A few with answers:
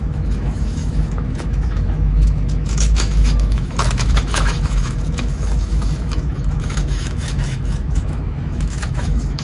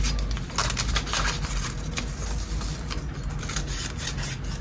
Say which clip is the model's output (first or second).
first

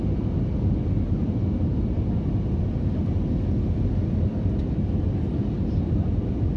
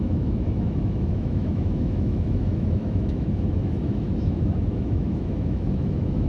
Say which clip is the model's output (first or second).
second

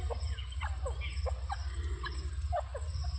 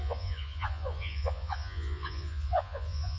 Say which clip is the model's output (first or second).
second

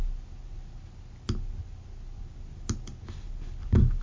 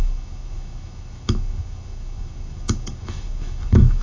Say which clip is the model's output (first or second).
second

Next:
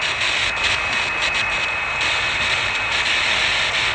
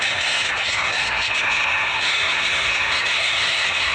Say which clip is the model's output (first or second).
second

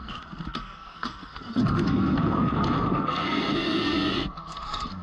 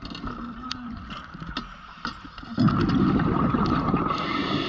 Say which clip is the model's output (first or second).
first